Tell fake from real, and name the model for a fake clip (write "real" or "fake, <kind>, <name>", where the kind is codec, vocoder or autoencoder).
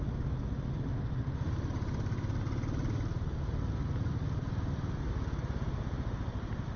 real